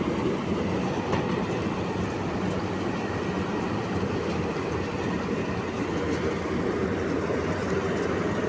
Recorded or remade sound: recorded